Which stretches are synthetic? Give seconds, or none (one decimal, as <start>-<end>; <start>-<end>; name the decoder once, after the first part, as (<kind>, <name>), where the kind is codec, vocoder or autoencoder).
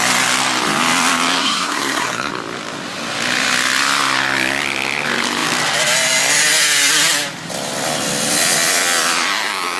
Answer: 1.4-2.3 (codec, SNAC)